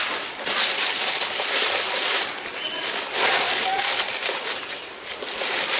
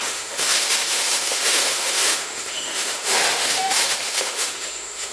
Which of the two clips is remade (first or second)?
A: second